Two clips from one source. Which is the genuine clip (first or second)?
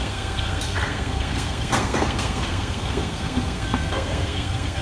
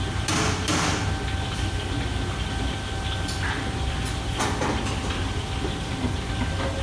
second